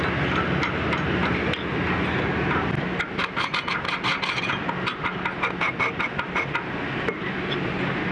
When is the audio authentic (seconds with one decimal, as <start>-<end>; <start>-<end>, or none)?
0.0-8.1